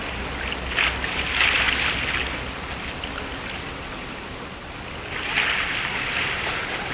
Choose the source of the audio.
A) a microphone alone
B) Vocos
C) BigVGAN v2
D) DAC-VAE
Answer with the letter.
A